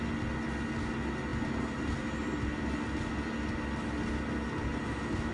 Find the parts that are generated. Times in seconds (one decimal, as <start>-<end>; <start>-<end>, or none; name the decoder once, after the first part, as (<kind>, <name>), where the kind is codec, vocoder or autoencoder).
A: none